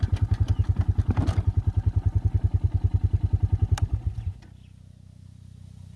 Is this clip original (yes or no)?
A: yes